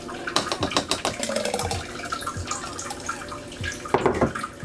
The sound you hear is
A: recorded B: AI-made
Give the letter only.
A